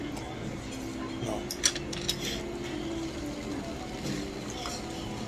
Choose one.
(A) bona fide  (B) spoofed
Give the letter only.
A